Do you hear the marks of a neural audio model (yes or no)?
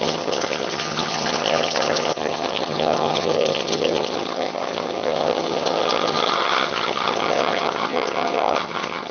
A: yes